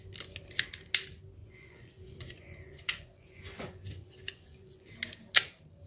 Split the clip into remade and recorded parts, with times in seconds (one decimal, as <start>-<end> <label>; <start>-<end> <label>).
0.0-1.4 recorded; 1.4-4.9 remade; 4.9-5.9 recorded